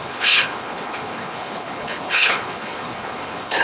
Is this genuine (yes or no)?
no